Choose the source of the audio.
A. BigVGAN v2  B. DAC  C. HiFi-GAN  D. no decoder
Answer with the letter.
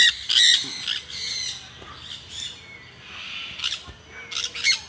D